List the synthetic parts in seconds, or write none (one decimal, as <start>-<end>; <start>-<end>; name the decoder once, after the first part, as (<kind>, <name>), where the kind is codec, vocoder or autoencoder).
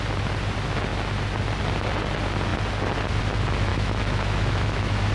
3.7-5.1 (autoencoder, DAC-VAE)